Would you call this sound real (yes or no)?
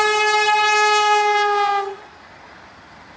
yes